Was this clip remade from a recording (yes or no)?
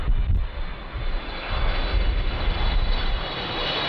no